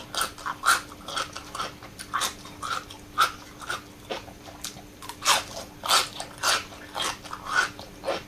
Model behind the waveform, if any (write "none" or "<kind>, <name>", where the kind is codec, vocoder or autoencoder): none